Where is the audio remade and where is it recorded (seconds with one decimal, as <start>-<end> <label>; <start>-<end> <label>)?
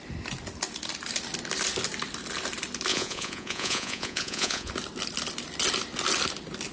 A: 0.0-2.9 recorded; 2.9-4.7 remade; 4.7-6.7 recorded